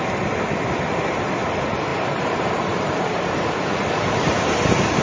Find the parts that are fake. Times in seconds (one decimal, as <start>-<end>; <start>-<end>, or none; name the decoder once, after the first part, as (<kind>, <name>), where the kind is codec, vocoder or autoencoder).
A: 1.9-5.0 (vocoder, BigVGAN v2)